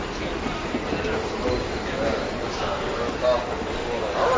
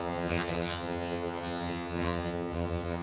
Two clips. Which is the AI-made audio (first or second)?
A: second